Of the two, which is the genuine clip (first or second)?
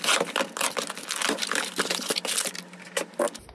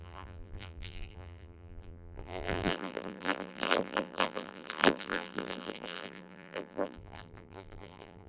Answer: first